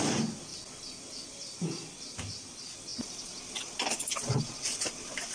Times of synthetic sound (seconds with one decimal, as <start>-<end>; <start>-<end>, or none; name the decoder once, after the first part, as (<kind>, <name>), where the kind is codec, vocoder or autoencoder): 0.0-5.3 (vocoder, BigVGAN v2)